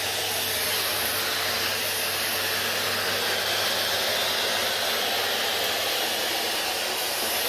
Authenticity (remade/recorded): recorded